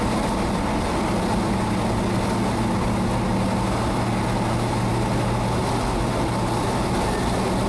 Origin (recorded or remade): recorded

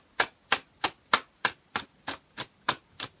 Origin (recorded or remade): recorded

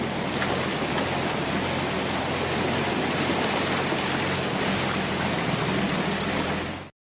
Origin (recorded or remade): recorded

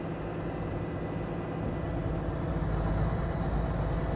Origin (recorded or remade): recorded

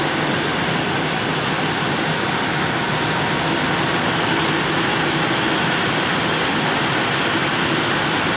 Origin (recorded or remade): recorded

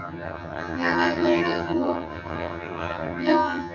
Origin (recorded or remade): remade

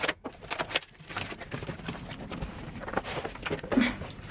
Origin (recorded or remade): recorded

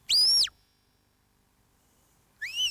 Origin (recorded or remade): recorded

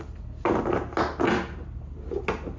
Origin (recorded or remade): recorded